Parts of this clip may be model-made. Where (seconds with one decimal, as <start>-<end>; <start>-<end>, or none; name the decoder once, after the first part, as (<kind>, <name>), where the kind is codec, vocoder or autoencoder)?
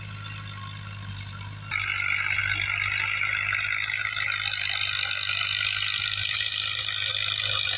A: none